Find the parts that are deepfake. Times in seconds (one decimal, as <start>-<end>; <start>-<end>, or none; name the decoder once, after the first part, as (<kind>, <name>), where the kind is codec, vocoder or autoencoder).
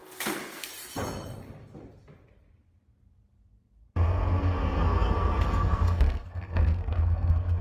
0.0-0.7 (codec, SNAC); 3.4-7.6